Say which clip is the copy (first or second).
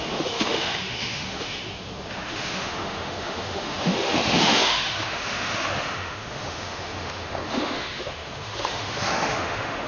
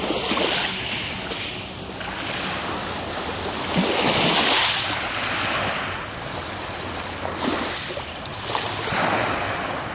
first